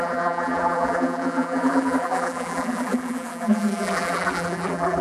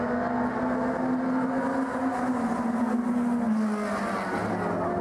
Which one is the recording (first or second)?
second